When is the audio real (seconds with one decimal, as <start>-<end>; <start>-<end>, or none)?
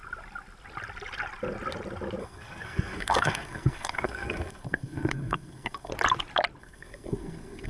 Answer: 0.0-2.2; 5.9-6.6